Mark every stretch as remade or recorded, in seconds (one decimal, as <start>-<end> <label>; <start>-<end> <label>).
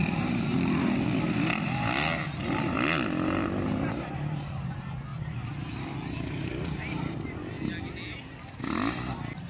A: 0.0-9.5 recorded